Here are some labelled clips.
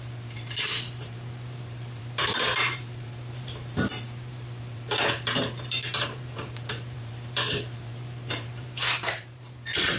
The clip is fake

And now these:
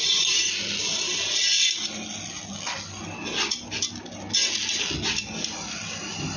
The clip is real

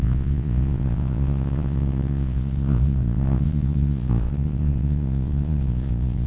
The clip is fake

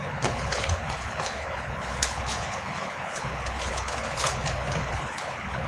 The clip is fake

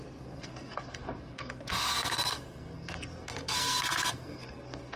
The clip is fake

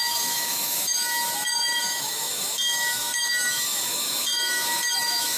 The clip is fake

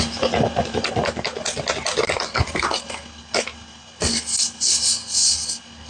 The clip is fake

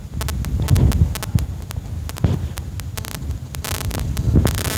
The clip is real